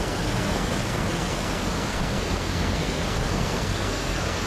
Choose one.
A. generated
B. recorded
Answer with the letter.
A